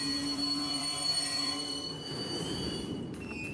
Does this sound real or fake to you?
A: fake